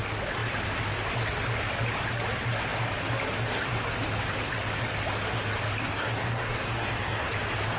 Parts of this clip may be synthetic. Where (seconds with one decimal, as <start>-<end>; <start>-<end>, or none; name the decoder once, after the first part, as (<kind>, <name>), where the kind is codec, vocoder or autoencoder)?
5.8-7.3 (codec, SNAC)